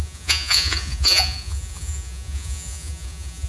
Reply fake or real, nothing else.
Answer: fake